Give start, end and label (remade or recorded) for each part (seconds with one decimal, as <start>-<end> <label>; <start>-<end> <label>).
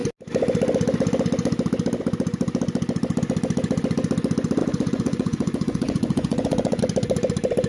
0.0-4.6 recorded; 4.6-6.8 remade; 6.8-7.7 recorded